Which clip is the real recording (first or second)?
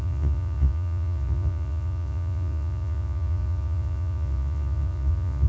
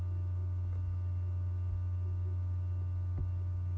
second